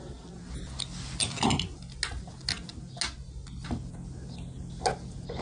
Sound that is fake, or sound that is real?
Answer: real